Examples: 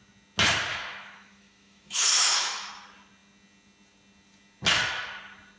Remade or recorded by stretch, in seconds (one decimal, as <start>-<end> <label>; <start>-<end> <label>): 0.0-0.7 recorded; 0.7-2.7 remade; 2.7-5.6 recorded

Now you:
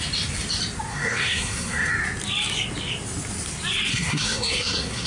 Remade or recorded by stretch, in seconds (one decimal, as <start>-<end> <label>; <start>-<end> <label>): 0.0-0.9 recorded; 0.9-1.9 remade; 1.9-3.9 recorded; 3.9-5.1 remade

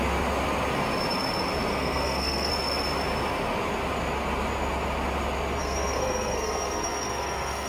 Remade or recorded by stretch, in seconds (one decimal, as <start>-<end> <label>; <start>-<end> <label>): 0.0-1.7 recorded; 1.7-2.5 remade; 2.5-5.6 recorded; 5.6-7.7 remade